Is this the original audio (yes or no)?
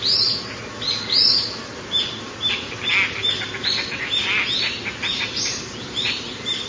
yes